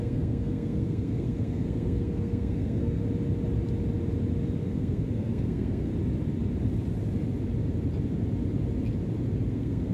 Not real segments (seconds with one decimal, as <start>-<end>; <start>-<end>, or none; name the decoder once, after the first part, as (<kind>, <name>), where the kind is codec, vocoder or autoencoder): 0.0-3.0 (codec, SNAC); 4.6-5.9; 9.5-9.9

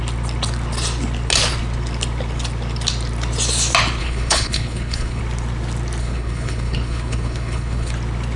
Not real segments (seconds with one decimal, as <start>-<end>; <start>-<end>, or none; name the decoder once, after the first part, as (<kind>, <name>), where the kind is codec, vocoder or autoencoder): 4.0-5.2 (codec, HILCodec); 6.0-7.9

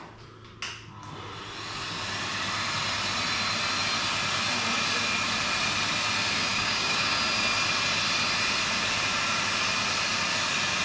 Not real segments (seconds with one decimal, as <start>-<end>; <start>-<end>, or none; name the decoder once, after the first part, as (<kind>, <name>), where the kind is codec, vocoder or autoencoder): 6.5-7.2 (codec, DAC)

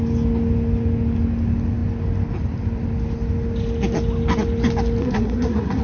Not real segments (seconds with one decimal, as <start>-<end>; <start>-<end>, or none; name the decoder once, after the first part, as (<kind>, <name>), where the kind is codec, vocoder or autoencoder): 5.0-5.8 (codec, SNAC)

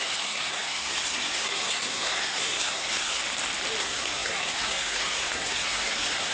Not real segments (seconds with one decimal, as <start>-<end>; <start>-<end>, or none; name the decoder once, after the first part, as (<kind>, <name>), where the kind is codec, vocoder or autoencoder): 0.0-3.2 (codec, SNAC); 3.8-6.3

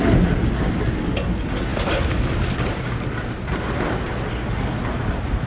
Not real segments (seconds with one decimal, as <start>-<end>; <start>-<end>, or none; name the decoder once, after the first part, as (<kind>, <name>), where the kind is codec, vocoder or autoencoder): none

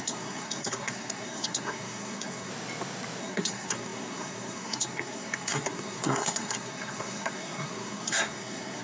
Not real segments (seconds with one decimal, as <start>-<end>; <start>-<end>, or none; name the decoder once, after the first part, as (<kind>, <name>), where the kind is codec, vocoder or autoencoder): 0.0-2.5 (codec, SNAC); 3.2-8.8